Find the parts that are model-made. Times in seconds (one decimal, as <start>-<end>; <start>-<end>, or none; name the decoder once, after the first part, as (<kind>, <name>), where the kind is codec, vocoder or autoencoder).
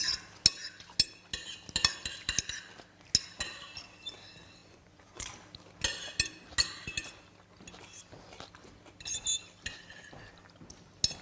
4.6-5.3 (vocoder, Vocos)